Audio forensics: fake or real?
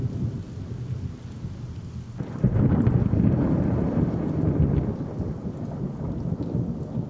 real